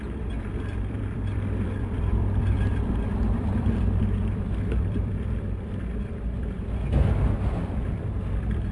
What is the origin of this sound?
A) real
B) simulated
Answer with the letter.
B